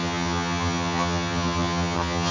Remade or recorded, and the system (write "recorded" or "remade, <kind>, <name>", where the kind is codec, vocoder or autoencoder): remade, vocoder, HiFi-GAN